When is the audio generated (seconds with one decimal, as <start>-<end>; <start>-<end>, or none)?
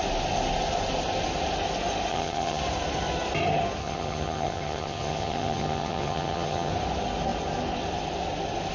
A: 2.1-2.6; 3.8-6.7